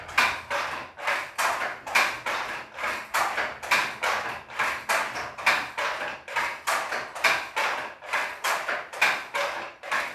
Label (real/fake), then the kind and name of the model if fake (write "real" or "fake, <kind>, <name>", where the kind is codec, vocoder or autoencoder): real